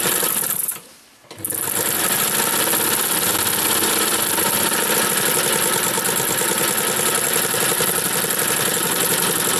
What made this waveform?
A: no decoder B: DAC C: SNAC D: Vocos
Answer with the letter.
A